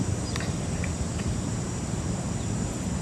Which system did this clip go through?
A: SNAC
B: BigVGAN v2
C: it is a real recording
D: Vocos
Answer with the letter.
C